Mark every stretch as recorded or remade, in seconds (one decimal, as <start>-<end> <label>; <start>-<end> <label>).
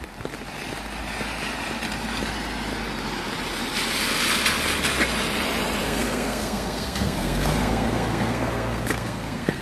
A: 0.0-5.8 recorded; 5.8-9.6 remade